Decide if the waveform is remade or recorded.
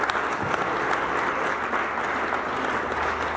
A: recorded